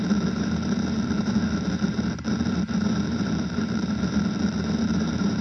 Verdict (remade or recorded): remade